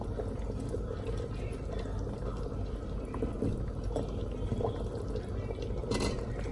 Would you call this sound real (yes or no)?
yes